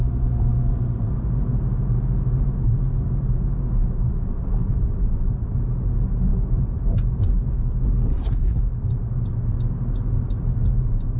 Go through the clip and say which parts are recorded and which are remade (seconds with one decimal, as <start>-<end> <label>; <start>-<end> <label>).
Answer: 0.0-8.1 recorded; 8.1-8.6 remade; 8.6-11.2 recorded